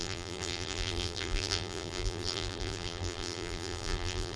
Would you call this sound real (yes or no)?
no